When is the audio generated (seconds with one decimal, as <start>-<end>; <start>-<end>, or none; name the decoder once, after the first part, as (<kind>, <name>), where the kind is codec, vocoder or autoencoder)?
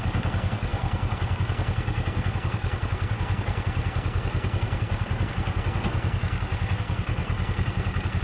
0.0-8.2 (codec, SNAC)